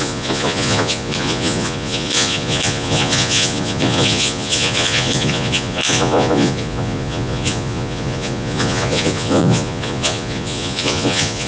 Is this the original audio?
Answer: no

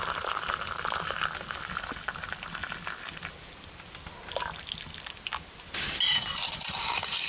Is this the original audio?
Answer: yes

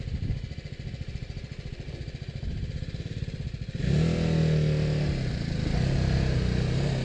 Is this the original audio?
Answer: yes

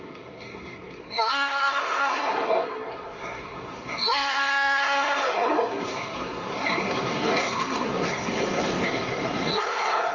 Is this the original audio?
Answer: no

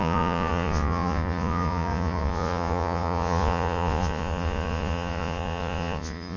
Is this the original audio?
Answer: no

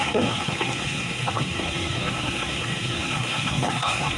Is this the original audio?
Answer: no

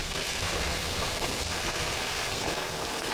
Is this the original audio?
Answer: no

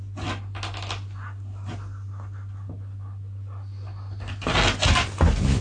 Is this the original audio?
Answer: yes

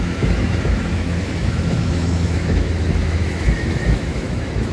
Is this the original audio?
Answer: no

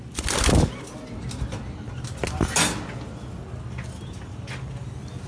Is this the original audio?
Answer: yes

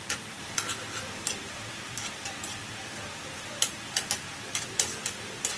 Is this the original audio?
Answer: no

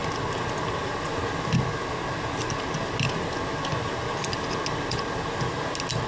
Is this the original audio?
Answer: yes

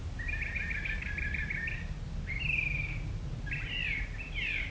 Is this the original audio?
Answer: yes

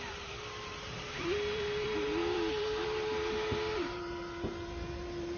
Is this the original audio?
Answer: no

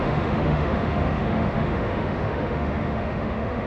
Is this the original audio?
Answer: no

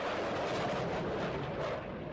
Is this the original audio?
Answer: yes